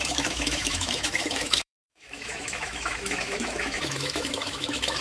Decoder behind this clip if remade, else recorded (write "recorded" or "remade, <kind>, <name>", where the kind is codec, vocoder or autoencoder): remade, autoencoder, DAC-VAE